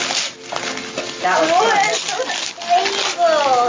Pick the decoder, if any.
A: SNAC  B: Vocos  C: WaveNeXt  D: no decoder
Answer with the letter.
D